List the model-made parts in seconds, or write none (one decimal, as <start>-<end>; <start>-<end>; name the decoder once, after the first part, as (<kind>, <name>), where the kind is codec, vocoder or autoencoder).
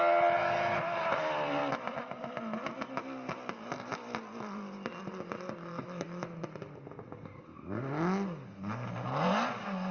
none